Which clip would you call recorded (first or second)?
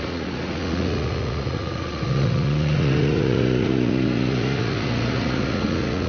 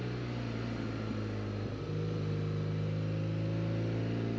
second